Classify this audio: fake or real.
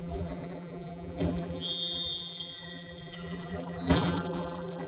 fake